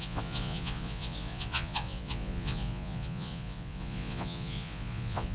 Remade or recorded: remade